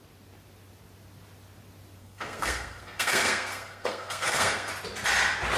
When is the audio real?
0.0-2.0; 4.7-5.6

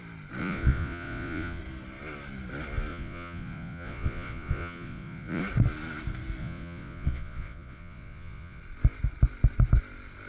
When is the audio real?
0.0-0.4; 1.6-2.9; 5.4-6.4; 8.6-10.3

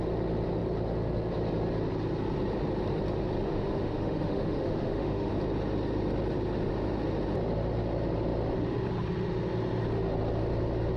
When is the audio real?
0.0-3.4; 5.3-11.0

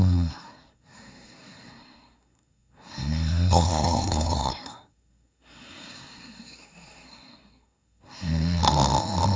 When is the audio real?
8.6-9.4

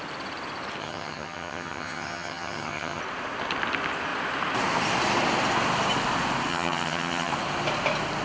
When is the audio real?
0.0-0.8; 3.0-6.5; 7.3-8.2

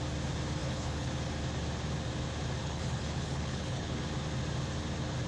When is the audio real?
0.0-0.6; 1.1-2.6; 4.0-5.3